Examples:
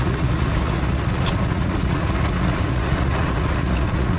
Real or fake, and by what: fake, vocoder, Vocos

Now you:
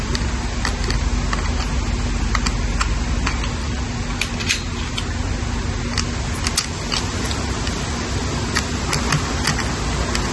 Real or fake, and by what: real